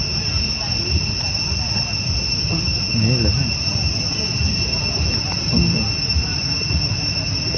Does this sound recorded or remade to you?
recorded